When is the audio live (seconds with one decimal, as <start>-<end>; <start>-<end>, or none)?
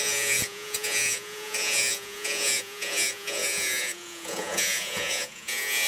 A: none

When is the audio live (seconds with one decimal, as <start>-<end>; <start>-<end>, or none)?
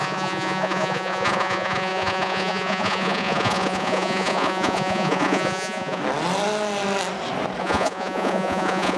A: 6.0-7.6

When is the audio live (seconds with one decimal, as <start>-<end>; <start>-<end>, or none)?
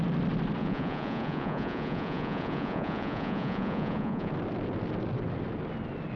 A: 0.0-0.6; 4.3-6.2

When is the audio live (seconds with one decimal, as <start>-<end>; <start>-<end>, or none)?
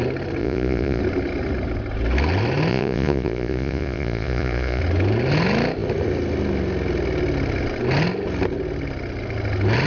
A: 0.0-0.4; 1.0-2.7; 4.8-9.9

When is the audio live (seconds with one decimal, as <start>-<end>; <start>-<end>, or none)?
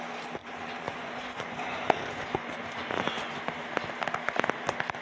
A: 0.0-0.4; 3.4-5.0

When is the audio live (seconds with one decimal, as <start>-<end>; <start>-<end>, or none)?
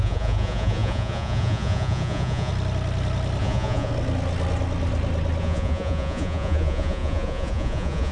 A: 2.5-3.4; 3.9-5.4